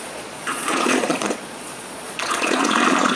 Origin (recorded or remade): remade